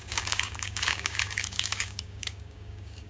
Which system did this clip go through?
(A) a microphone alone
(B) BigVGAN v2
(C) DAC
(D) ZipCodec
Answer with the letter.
C